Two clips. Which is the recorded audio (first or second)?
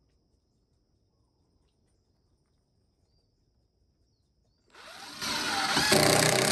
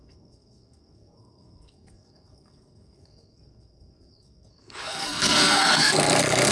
first